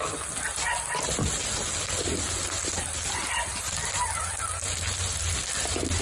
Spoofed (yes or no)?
no